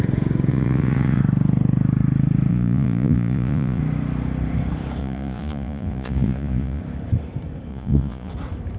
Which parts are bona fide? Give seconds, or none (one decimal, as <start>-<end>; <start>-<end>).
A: 0.0-0.5; 1.2-2.5; 3.8-5.0; 6.8-7.7; 8.3-8.8